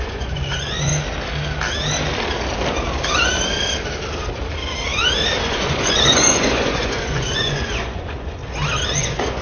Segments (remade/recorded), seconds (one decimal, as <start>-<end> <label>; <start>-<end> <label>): 0.0-0.9 remade; 0.9-5.4 recorded; 5.4-8.4 remade; 8.4-9.0 recorded; 9.0-9.4 remade